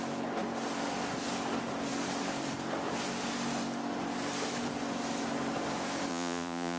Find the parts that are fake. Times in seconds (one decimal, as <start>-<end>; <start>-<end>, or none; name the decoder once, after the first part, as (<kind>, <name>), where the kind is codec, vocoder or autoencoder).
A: 6.1-6.8 (vocoder, Vocos)